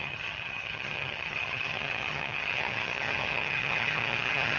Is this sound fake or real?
fake